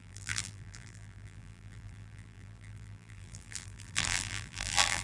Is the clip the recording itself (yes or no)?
no